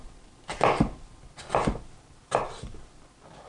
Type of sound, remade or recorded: recorded